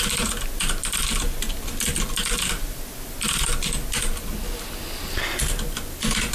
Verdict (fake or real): real